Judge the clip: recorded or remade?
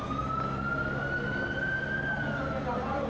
recorded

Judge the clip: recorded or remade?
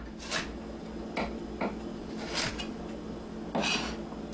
recorded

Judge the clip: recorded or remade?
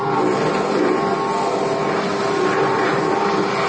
recorded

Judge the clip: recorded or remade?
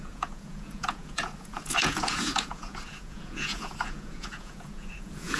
remade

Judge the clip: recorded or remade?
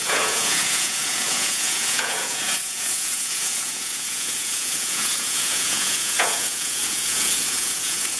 remade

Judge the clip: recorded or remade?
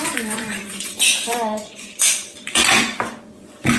remade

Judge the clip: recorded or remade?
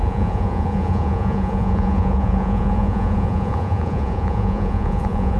remade